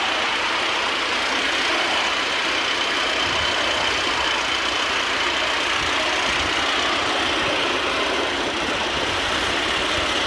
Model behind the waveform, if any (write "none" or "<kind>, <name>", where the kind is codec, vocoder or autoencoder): none